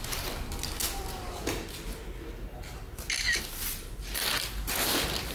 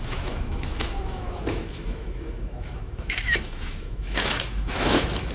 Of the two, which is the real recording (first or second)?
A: first